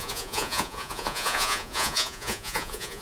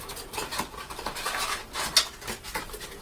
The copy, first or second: first